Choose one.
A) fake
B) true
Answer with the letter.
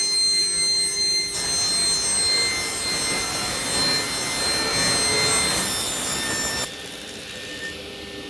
B